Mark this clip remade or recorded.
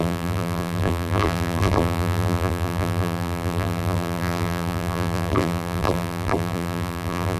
remade